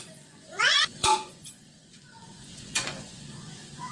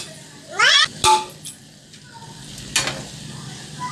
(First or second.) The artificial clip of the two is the first